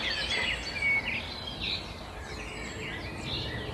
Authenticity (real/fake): real